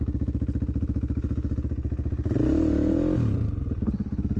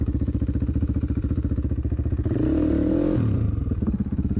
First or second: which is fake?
second